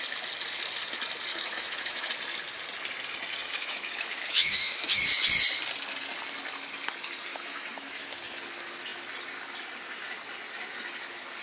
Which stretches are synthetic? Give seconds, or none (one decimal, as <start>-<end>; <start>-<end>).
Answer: 1.3-2.1; 3.4-5.0; 7.3-8.0